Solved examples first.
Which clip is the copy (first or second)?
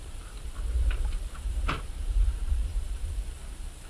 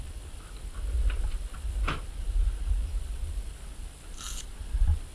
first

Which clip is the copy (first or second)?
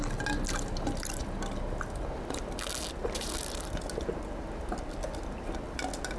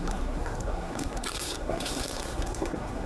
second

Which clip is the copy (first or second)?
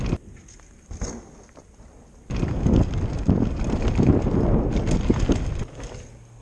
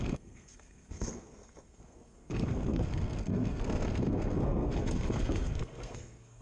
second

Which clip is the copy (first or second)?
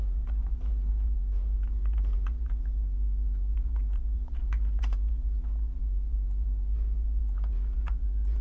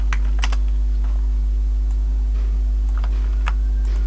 first